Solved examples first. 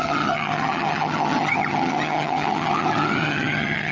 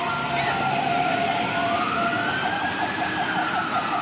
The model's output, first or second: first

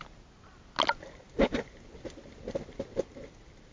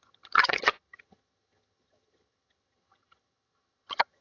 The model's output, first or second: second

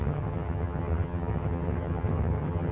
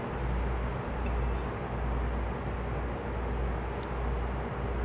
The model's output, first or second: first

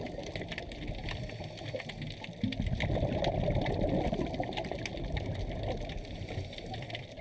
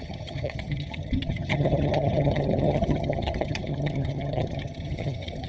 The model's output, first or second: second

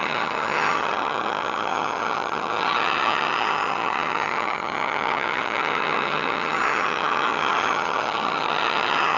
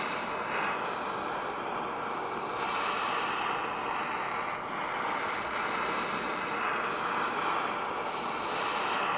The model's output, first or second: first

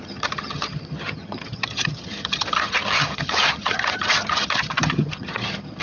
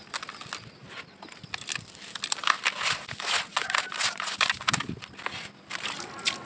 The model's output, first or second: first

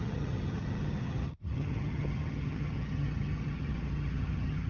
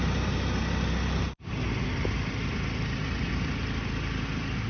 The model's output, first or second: first